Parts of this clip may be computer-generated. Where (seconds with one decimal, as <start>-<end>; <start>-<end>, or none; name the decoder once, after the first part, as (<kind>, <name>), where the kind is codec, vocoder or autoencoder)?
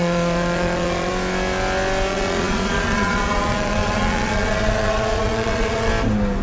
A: 0.0-1.1 (vocoder, Vocos); 2.1-5.9